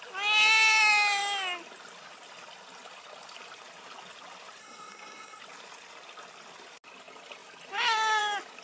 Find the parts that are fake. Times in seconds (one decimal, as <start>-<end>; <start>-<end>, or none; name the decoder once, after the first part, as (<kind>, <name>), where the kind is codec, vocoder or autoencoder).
4.6-5.4 (codec, SNAC)